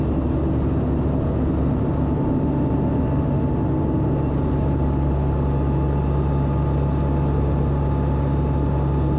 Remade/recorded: recorded